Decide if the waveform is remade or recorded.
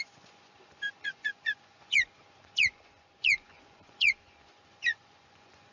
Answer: remade